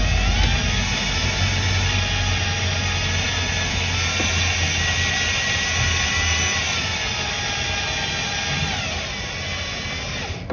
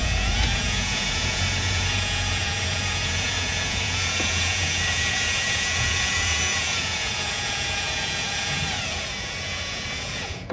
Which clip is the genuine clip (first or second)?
first